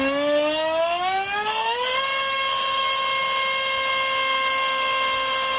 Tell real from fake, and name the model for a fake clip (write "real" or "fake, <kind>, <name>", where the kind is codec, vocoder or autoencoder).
real